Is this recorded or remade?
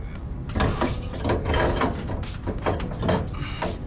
recorded